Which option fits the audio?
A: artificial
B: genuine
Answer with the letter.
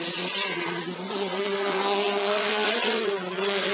A